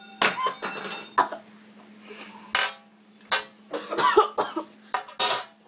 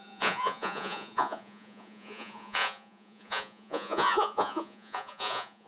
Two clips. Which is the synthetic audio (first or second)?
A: second